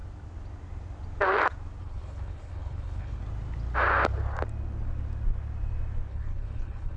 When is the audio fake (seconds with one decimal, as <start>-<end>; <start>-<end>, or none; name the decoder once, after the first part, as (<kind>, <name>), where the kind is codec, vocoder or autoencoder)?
1.8-3.2 (codec, HILCodec); 6.1-7.0